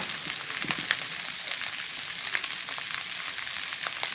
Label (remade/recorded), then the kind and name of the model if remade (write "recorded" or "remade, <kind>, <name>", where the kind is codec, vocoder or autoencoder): recorded